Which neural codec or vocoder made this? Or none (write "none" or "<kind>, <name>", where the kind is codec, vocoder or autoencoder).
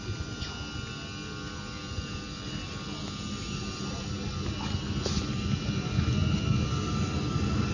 none